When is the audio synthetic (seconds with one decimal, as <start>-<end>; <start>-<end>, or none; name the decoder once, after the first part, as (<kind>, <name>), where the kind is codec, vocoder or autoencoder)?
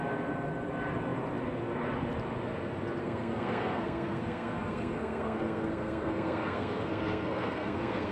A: 3.0-8.1 (codec, SNAC)